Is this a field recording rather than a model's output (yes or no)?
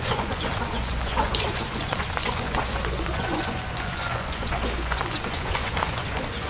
no